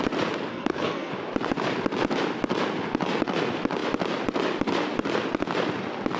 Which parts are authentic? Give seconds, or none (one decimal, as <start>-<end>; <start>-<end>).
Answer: 0.0-0.5; 1.1-6.2